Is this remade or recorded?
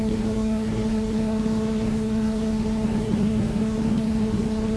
remade